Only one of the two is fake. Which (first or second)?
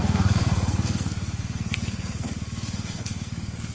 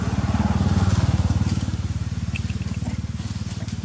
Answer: first